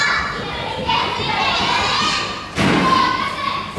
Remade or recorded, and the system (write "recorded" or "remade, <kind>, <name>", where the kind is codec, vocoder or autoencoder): recorded